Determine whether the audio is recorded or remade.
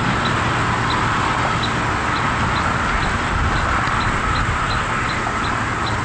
recorded